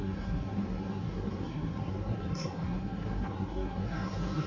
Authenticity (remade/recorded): remade